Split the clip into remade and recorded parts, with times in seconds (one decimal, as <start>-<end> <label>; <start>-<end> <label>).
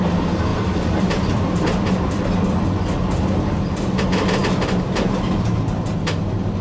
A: 0.0-0.5 recorded; 0.5-1.9 remade; 1.9-6.6 recorded